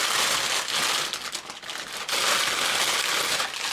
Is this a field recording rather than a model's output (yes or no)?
yes